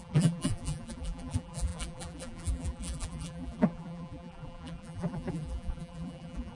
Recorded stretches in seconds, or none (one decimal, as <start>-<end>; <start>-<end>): none